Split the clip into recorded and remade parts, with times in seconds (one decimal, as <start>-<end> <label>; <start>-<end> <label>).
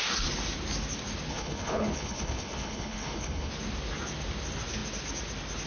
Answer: 0.0-1.3 recorded; 1.3-3.5 remade; 3.5-5.7 recorded